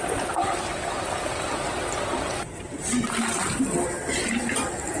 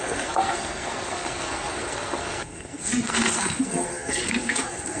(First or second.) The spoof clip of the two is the second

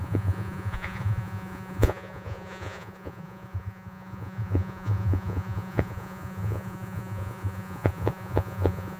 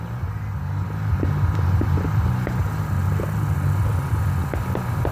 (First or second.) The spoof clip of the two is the first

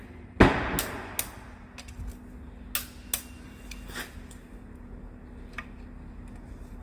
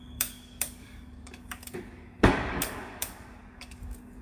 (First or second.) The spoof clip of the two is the second